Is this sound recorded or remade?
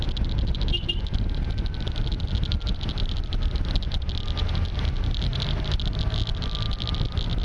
recorded